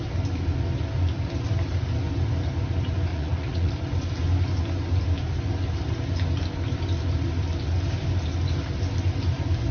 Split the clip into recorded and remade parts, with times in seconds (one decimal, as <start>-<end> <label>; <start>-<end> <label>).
0.0-3.1 recorded; 3.1-3.7 remade; 3.7-9.7 recorded